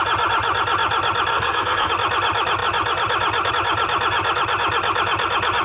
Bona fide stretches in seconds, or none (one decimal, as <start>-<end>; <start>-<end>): 0.0-1.3; 1.9-5.6